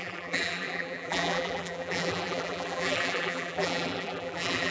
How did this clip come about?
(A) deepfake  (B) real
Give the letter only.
A